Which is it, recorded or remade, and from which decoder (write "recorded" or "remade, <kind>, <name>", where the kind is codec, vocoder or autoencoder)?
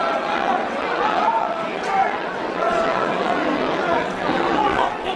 remade, vocoder, WaveNeXt